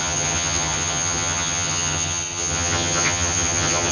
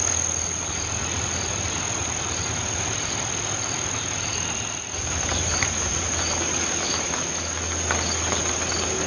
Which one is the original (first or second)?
second